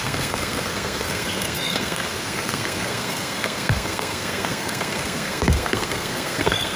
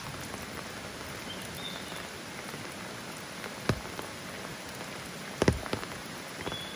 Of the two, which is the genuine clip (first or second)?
second